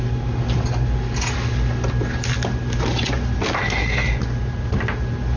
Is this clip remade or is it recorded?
recorded